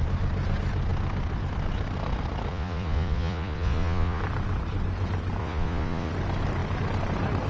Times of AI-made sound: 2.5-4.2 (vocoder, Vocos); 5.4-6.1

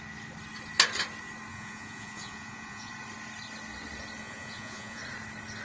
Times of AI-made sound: 1.5-2.9 (vocoder, Vocos); 4.2-5.0

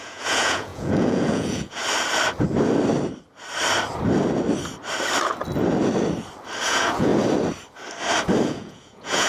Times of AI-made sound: 0.0-1.8 (vocoder, Vocos); 6.6-7.1; 8.5-9.3